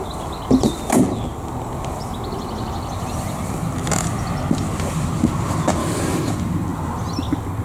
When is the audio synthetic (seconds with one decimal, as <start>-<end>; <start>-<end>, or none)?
5.8-6.3